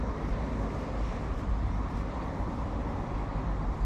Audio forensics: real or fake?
real